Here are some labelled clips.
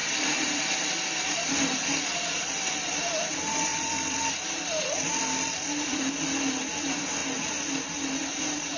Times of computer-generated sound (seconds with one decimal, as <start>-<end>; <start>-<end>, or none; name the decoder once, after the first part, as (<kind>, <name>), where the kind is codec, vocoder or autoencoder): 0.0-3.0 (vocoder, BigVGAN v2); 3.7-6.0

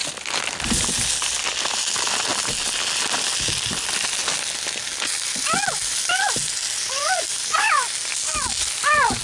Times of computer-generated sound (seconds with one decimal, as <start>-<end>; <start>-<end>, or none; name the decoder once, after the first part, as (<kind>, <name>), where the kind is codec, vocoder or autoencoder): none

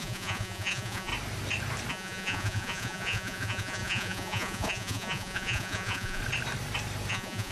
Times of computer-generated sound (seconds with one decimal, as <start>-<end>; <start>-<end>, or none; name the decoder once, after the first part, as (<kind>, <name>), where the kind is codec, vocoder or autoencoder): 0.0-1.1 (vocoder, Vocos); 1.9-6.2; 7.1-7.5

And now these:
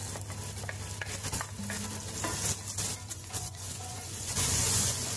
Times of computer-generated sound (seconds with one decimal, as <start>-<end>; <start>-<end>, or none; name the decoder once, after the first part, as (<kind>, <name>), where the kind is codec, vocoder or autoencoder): 3.1-5.2 (vocoder, Vocos)